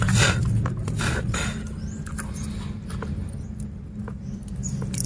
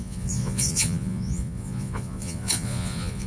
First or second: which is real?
first